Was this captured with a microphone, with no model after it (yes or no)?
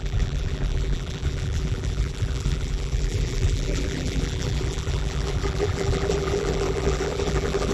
no